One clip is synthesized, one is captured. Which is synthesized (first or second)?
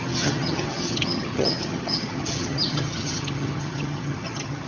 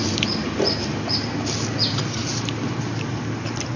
first